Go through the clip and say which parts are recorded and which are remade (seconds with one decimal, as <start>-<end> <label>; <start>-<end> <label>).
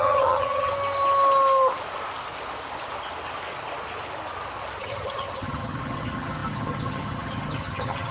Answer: 0.0-0.7 remade; 0.7-4.8 recorded; 4.8-8.1 remade